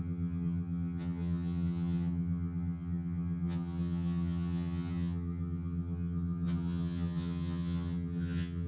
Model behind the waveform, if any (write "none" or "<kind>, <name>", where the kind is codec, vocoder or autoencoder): vocoder, HiFi-GAN